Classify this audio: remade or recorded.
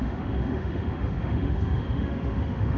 remade